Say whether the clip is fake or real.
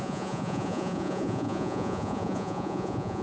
fake